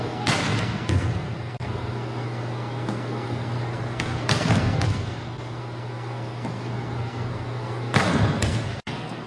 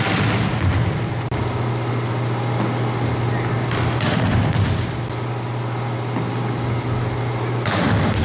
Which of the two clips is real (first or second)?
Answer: second